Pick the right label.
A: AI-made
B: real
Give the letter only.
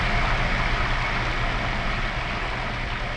B